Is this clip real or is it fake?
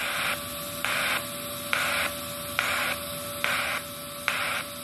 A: real